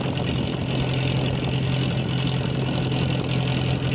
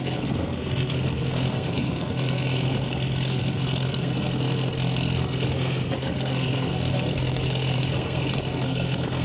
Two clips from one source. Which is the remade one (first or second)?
second